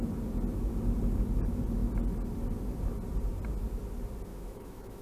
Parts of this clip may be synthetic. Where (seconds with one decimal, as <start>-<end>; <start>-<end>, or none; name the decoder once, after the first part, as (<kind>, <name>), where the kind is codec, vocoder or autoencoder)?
4.3-5.0 (autoencoder, DAC-VAE)